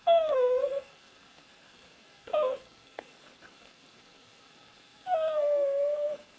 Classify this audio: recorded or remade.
remade